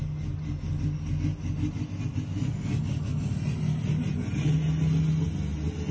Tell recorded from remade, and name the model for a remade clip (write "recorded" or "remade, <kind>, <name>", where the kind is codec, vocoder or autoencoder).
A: recorded